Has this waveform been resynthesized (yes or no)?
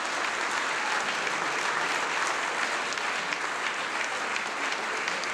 no